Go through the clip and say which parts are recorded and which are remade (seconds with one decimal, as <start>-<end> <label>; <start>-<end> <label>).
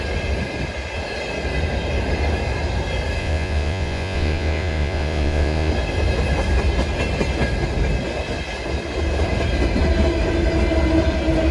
0.0-3.2 recorded; 3.2-5.7 remade; 5.7-11.5 recorded